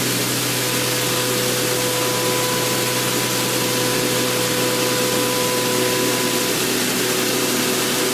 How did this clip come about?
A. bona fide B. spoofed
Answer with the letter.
A